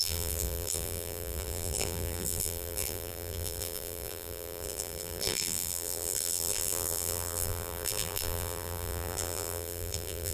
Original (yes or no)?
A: no